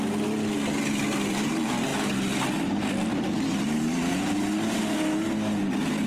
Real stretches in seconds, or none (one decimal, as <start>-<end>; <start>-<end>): 0.0-1.9; 4.8-6.1